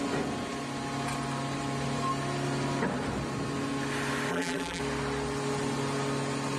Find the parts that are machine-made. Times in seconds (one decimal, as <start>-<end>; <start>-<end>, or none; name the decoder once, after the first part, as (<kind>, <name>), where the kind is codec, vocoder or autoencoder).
4.3-4.8 (vocoder, BigVGAN v2)